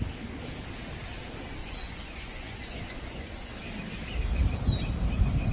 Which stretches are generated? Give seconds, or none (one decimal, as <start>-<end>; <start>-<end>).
1.6-3.5